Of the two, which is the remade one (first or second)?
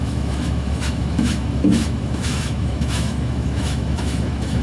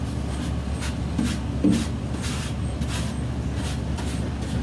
first